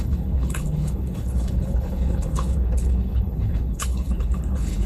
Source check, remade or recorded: remade